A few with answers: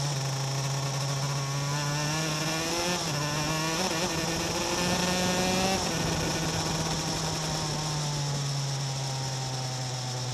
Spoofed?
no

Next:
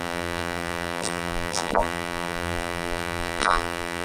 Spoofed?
yes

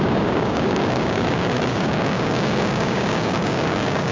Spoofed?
yes